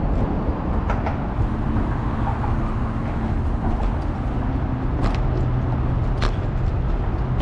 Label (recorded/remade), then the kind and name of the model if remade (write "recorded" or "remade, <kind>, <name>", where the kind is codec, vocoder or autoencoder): recorded